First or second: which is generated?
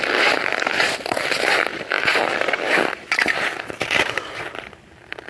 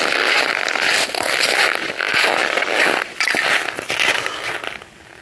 first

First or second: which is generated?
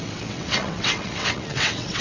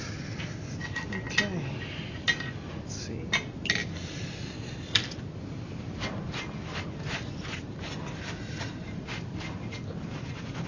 first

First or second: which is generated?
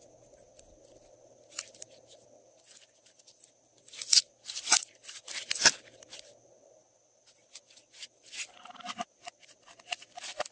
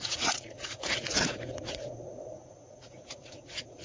second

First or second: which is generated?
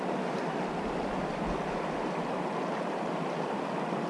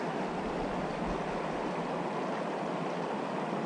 first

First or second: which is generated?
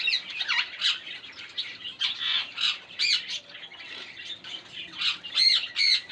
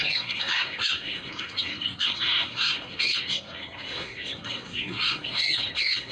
second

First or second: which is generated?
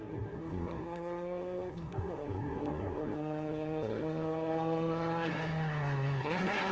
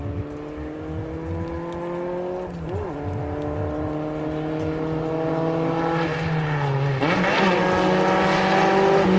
first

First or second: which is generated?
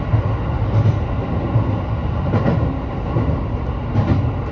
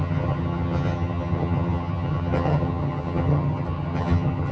second